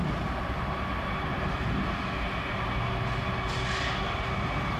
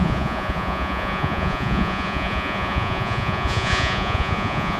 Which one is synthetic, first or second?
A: second